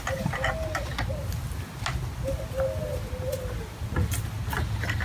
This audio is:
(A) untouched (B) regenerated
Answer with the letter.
A